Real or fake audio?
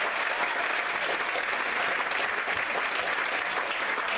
real